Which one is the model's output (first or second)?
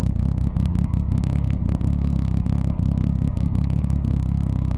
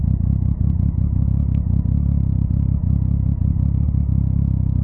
first